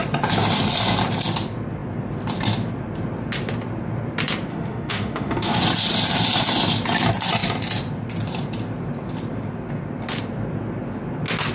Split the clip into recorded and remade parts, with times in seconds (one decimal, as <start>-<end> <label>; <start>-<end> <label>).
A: 0.0-4.5 recorded; 4.5-5.6 remade; 5.6-11.5 recorded